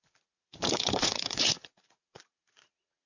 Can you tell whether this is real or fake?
fake